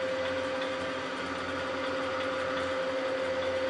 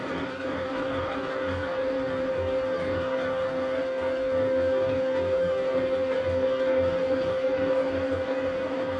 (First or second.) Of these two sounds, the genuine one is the first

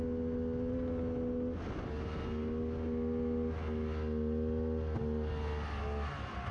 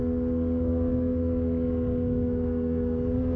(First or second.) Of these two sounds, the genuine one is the first